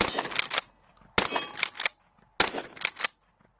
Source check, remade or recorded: recorded